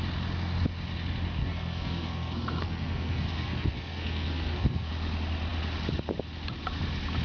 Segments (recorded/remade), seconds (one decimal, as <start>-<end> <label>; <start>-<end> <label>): 0.0-1.4 recorded; 1.4-4.9 remade; 4.9-7.2 recorded